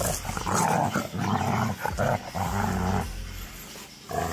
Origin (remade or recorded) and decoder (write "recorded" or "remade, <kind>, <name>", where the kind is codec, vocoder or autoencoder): recorded